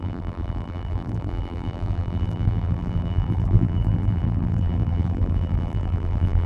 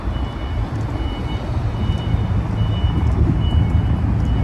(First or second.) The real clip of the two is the second